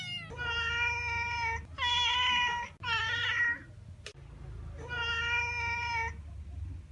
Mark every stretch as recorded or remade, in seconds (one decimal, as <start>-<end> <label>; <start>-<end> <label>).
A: 0.0-6.9 recorded

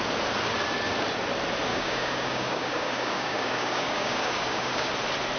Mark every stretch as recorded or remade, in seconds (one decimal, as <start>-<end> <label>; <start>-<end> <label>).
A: 0.0-1.7 recorded; 1.7-4.9 remade; 4.9-5.4 recorded

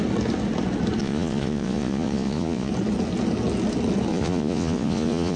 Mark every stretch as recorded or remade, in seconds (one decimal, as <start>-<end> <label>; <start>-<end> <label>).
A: 0.0-1.0 recorded; 1.0-2.7 remade; 2.7-4.1 recorded; 4.1-5.4 remade

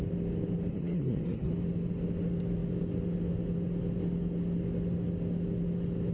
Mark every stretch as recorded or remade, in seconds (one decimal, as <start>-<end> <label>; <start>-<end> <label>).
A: 0.0-0.7 recorded; 0.7-1.5 remade; 1.5-6.1 recorded

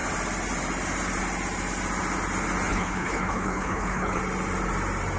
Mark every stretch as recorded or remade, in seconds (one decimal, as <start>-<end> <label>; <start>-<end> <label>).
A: 0.0-2.7 recorded; 2.7-4.2 remade; 4.2-5.2 recorded